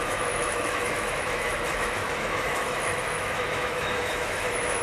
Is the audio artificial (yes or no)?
yes